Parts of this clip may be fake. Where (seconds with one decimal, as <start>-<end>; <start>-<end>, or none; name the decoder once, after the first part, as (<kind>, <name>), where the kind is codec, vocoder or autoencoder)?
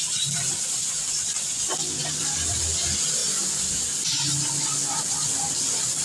none